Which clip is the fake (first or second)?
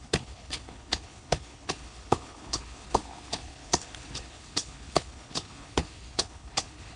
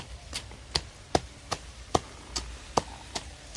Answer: first